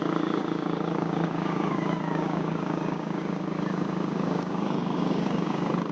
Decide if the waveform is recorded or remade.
remade